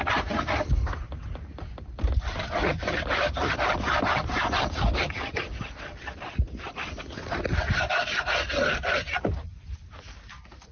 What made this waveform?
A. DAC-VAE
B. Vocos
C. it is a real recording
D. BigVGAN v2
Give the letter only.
C